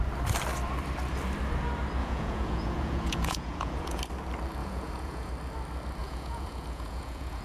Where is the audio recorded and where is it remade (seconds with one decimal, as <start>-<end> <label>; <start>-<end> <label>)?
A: 0.0-2.0 recorded; 2.0-4.0 remade; 4.0-4.6 recorded; 4.6-5.3 remade; 5.3-6.0 recorded; 6.0-7.4 remade